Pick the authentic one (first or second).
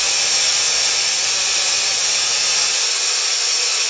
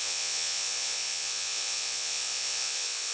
first